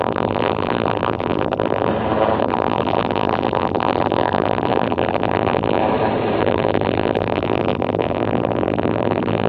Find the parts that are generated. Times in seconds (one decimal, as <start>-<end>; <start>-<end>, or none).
0.0-1.9; 2.4-5.8; 6.4-9.5